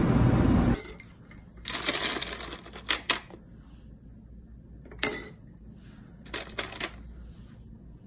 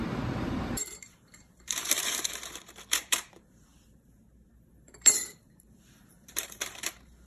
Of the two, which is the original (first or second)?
first